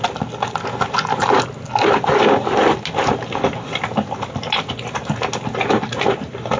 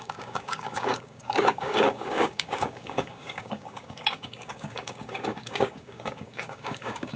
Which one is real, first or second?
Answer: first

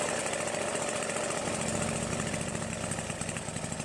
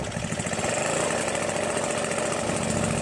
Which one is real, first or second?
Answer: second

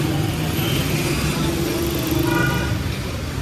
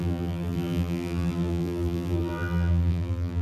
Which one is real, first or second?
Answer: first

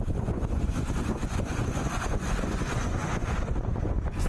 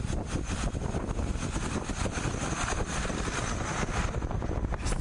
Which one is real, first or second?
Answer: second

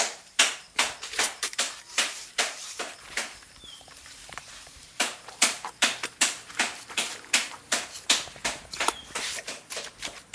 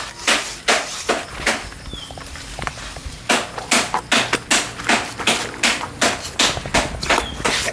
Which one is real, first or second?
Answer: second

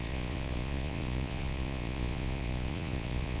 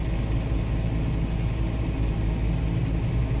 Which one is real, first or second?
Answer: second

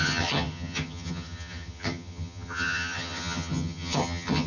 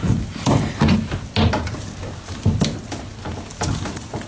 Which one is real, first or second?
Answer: second